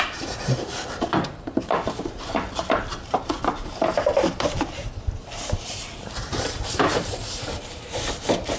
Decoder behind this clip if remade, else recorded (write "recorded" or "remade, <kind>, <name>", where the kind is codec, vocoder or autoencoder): remade, vocoder, BigVGAN v2